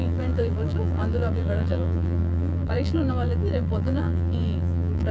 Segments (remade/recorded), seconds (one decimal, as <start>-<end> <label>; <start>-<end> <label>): 0.0-5.1 remade